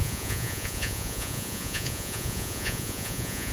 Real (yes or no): no